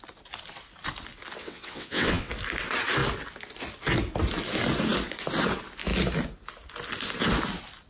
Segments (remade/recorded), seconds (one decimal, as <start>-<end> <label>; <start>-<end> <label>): 0.0-1.4 recorded; 1.4-2.3 remade; 2.3-7.9 recorded